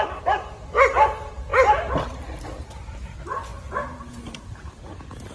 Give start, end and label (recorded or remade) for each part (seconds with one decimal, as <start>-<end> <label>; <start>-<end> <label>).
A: 0.0-5.3 recorded